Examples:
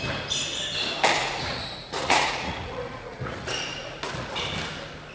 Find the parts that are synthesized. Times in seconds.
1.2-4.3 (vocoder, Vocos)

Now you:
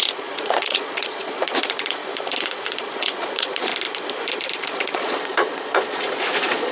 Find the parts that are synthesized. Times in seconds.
0.0-2.0 (vocoder, Vocos); 2.8-3.7; 4.6-6.7

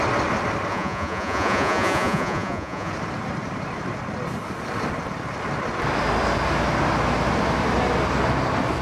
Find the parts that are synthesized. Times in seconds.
0.7-2.9 (vocoder, Vocos)

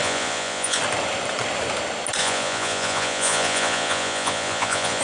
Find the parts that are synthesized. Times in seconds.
0.0-0.8 (vocoder, Vocos); 2.2-5.0

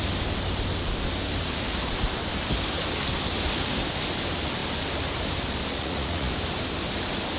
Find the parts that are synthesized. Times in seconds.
5.7-6.3 (vocoder, Vocos)

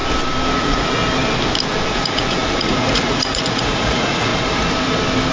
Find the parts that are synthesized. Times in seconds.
0.6-1.0 (vocoder, Vocos); 1.9-4.3